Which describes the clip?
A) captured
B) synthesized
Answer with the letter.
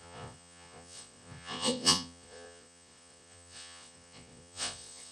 B